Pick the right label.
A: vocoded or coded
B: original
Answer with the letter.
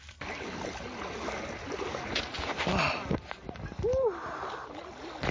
B